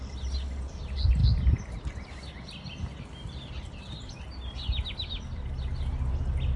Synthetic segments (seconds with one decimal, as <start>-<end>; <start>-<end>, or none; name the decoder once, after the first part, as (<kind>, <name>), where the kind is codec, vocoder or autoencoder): none